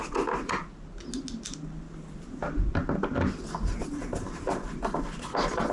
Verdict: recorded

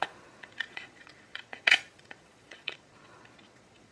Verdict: remade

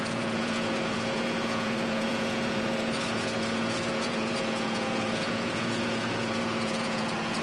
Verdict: remade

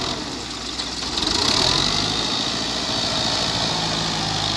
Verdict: recorded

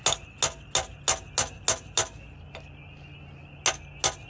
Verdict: recorded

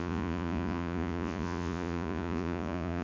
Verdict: remade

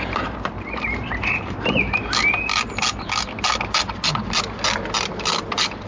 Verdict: recorded